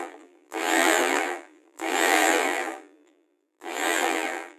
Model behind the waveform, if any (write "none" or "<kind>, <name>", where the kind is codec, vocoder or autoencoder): vocoder, BigVGAN v2